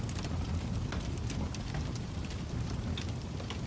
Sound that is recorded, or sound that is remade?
recorded